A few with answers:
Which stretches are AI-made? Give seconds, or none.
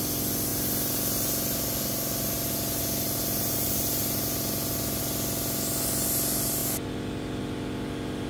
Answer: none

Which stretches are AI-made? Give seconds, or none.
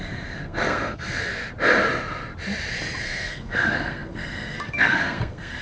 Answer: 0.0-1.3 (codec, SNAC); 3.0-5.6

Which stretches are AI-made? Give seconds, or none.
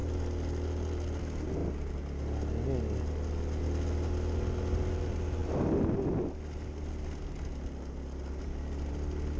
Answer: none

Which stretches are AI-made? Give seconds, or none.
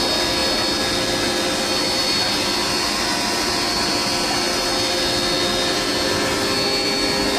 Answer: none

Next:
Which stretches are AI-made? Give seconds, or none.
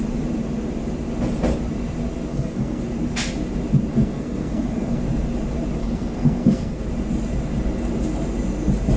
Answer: 2.3-2.8 (codec, SNAC); 3.9-5.0; 5.8-6.8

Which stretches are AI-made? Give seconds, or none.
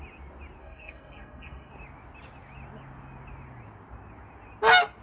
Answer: 0.6-1.7 (codec, SNAC)